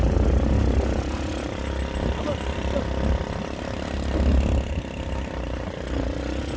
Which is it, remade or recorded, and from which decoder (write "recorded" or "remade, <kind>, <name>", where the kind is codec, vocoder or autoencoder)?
recorded